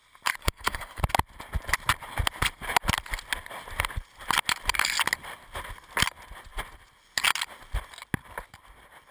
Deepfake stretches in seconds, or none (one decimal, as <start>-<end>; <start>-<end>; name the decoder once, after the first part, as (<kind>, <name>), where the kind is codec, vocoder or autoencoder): 0.4-1.0 (codec, SNAC)